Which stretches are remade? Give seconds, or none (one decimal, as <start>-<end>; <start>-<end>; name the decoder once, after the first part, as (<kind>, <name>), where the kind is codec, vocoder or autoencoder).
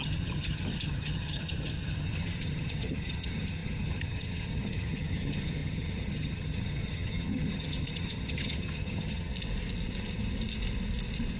0.0-9.3 (vocoder, HiFi-GAN)